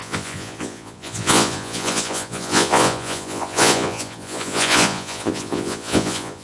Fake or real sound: fake